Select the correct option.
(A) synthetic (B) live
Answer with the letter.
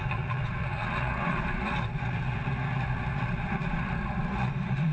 A